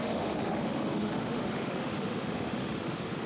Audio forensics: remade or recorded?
remade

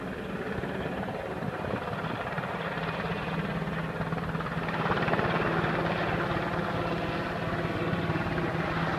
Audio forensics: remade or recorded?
recorded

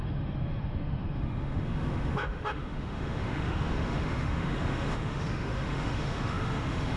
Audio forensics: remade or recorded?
remade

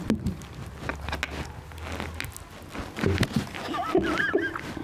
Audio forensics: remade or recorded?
recorded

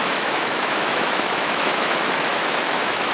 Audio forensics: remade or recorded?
remade